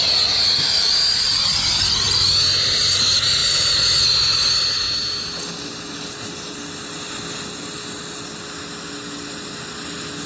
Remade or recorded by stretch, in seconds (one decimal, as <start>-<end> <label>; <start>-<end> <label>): 0.0-10.3 recorded